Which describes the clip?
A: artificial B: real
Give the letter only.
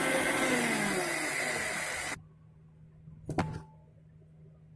B